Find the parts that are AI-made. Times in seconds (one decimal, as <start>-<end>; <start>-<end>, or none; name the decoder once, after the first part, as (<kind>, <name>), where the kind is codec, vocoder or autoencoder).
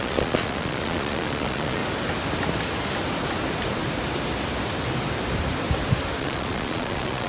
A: 0.0-1.8 (vocoder, Vocos); 6.2-7.3